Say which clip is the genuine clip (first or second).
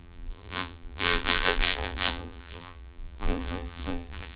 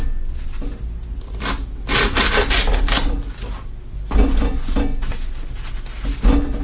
second